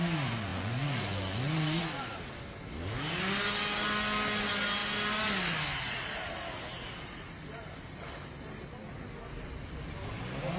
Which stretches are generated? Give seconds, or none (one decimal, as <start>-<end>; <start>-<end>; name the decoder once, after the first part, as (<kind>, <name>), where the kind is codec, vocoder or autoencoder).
none